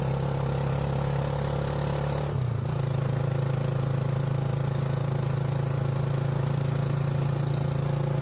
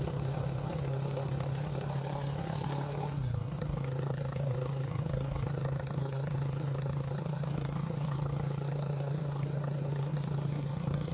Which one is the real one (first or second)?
first